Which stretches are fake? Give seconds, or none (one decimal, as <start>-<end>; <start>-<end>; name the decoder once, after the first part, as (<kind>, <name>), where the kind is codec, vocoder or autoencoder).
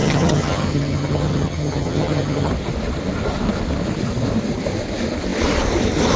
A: 0.0-2.5 (vocoder, HiFi-GAN)